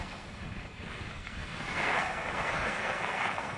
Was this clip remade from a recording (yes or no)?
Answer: yes